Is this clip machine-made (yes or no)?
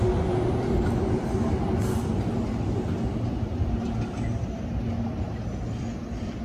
no